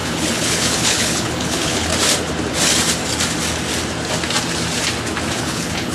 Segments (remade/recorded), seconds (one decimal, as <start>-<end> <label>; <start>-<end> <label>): 0.0-1.9 remade; 1.9-5.4 recorded; 5.4-5.9 remade